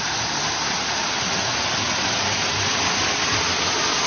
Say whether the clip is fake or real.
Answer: real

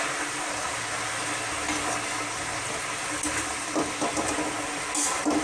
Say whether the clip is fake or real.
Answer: real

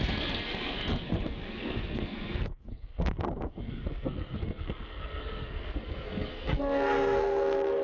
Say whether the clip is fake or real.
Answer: fake